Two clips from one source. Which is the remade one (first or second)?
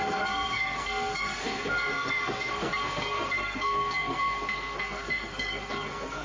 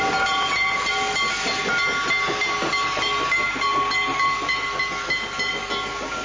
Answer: first